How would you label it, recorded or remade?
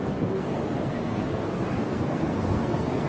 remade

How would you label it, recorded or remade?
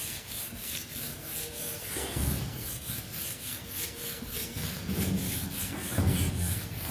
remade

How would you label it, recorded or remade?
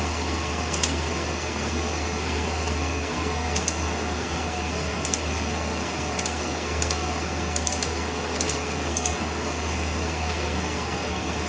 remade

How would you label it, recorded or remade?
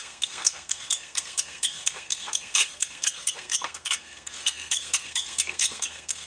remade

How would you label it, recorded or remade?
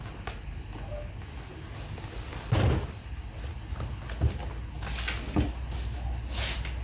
recorded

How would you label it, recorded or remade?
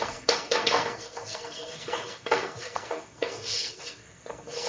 remade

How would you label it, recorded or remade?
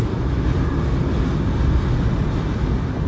recorded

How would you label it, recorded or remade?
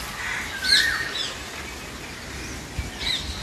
recorded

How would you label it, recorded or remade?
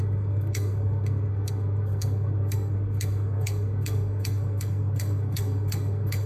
remade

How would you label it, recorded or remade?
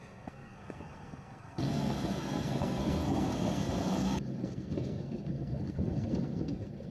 remade